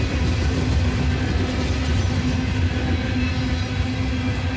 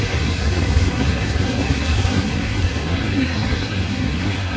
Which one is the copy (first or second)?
second